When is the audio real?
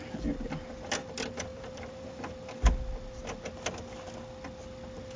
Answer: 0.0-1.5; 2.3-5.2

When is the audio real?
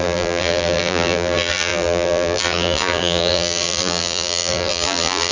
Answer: none